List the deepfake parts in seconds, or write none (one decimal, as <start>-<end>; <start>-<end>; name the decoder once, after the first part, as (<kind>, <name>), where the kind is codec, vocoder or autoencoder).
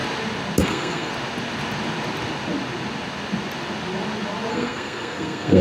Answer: 0.6-1.1 (codec, SNAC); 4.5-5.6